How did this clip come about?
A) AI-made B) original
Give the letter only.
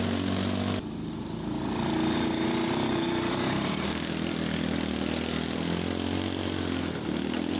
B